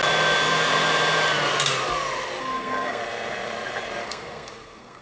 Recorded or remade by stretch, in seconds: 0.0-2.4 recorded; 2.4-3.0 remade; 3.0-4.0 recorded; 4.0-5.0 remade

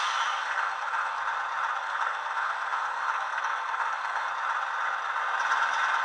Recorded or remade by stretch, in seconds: 0.0-0.4 recorded; 0.4-1.2 remade; 1.2-1.8 recorded; 1.8-4.3 remade; 4.3-6.0 recorded

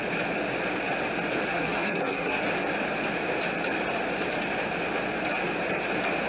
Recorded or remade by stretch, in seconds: 0.0-1.5 recorded; 1.5-2.4 remade; 2.4-6.3 recorded